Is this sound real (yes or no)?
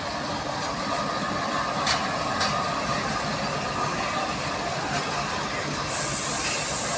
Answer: yes